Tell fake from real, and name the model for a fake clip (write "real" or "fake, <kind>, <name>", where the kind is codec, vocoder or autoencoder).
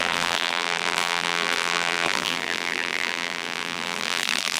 fake, vocoder, BigVGAN v2